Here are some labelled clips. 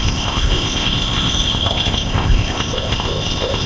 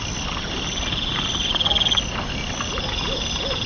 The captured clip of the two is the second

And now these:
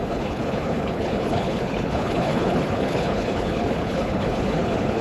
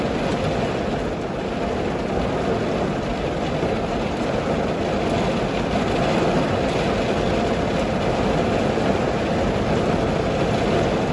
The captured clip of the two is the second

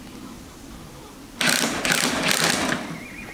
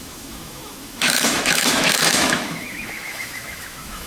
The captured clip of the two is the first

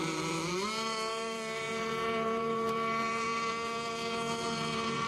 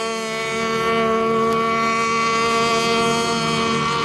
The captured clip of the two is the second